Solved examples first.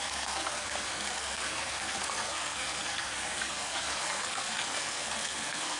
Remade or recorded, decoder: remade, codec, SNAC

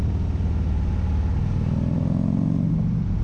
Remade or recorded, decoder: recorded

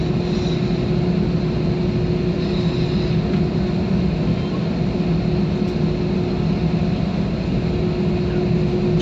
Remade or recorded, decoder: recorded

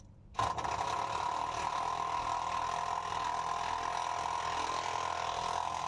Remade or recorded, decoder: recorded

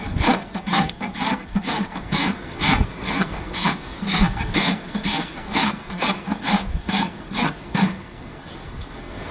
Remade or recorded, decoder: remade, codec, SNAC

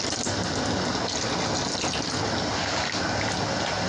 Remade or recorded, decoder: recorded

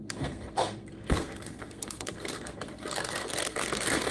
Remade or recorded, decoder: remade, codec, SNAC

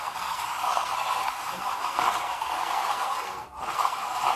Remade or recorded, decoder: remade, codec, SNAC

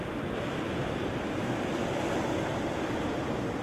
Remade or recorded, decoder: recorded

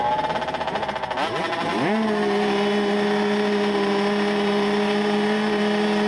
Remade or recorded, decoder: recorded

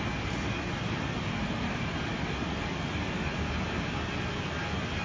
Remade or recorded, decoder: recorded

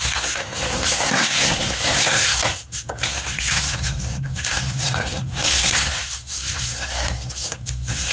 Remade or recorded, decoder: remade, codec, SNAC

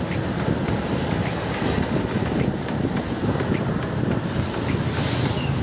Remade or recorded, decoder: recorded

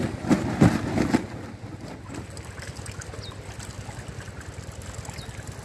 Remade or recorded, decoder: recorded